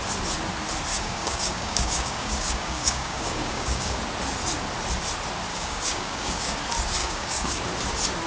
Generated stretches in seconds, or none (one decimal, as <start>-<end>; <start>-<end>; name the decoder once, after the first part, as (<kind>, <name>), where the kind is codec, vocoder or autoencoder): 0.9-4.0 (codec, DAC); 5.5-6.6; 7.0-7.6